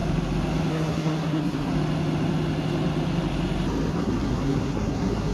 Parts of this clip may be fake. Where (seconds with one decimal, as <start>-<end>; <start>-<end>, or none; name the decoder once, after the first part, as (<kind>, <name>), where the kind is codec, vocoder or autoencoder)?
0.7-1.7 (codec, SNAC); 3.9-5.3